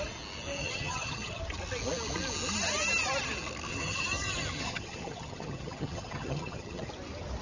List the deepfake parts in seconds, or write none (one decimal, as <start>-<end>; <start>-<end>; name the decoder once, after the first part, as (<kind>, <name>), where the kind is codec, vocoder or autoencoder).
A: 0.6-1.4 (vocoder, HiFi-GAN); 3.7-6.9